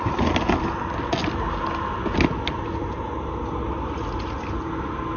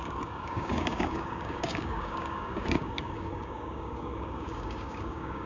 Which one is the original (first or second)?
first